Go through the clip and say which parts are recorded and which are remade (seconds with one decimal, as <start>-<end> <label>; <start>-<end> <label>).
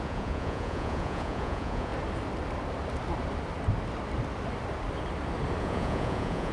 0.0-1.9 remade; 1.9-5.6 recorded; 5.6-6.5 remade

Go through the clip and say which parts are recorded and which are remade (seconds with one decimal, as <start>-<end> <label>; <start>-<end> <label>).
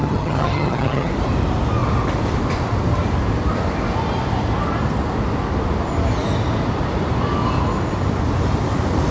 0.0-1.1 remade; 1.1-9.1 recorded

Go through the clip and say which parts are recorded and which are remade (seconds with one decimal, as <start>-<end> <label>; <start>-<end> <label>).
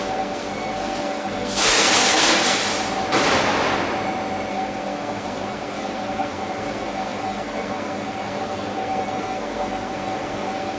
0.0-2.6 remade; 2.6-4.5 recorded; 4.5-10.8 remade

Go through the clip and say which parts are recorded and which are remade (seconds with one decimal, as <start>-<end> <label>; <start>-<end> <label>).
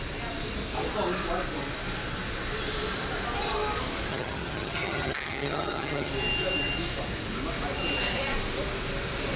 0.0-4.1 recorded; 4.1-6.1 remade; 6.1-9.4 recorded